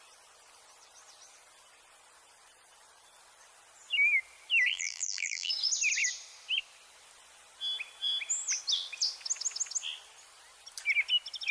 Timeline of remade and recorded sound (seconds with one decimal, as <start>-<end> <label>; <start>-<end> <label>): 0.0-4.7 recorded; 4.7-5.5 remade; 5.5-11.5 recorded